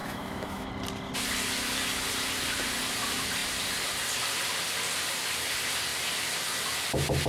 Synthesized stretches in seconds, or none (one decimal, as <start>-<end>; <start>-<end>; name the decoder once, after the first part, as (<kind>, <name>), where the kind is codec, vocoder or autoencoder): 0.0-0.7 (autoencoder, DAC-VAE)